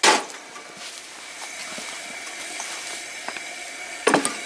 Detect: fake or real real